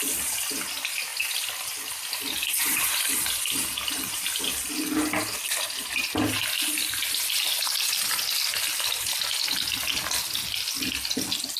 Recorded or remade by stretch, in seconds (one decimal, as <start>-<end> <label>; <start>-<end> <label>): 0.0-11.6 recorded